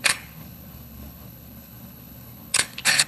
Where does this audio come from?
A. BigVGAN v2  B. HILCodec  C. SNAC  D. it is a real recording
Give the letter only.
B